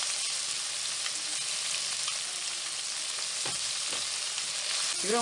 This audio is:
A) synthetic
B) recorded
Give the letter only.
B